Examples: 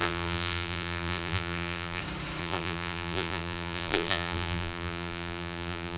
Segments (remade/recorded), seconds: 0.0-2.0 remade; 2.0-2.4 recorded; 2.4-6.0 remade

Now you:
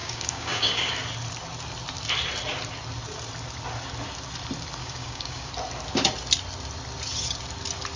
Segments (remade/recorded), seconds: 0.0-0.9 remade; 0.9-4.8 recorded; 4.8-5.5 remade; 5.5-8.0 recorded